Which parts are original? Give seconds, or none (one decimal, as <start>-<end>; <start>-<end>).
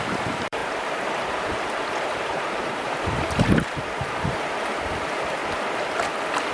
5.4-6.5